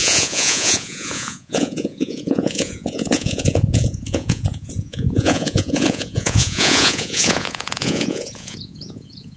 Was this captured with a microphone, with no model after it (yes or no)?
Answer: no